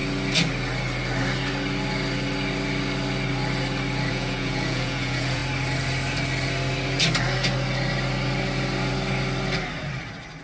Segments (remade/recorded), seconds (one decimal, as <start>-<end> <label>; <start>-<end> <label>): 0.0-4.1 recorded; 4.1-5.4 remade; 5.4-10.4 recorded